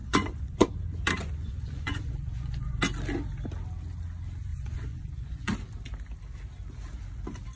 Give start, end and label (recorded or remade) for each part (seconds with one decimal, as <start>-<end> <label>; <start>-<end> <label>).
0.0-0.7 remade; 0.7-1.2 recorded; 1.2-2.8 remade; 2.8-4.5 recorded; 4.5-5.5 remade; 5.5-7.6 recorded